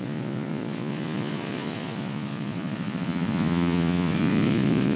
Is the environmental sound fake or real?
fake